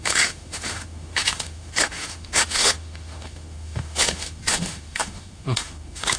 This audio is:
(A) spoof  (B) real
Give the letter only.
A